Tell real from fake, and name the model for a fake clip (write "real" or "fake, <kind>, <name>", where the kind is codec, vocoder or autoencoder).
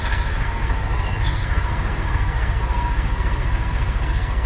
fake, codec, SNAC